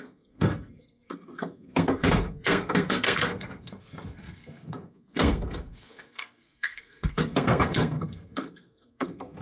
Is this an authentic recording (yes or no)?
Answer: no